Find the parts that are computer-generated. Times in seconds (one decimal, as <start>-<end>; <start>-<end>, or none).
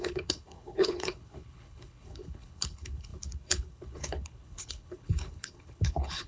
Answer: 0.0-6.3